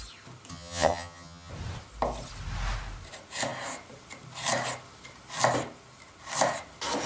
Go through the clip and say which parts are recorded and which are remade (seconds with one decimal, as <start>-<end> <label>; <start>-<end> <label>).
0.0-0.5 recorded; 0.5-1.5 remade; 1.5-7.1 recorded